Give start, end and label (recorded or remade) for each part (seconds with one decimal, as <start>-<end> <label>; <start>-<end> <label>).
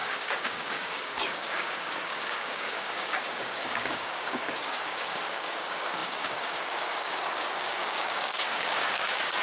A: 0.0-9.4 remade